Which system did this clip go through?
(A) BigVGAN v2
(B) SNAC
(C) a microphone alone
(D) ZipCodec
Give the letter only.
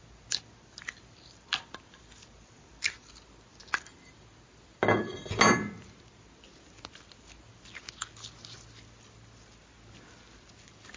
C